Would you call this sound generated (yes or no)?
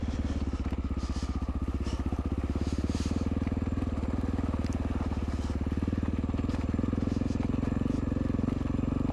no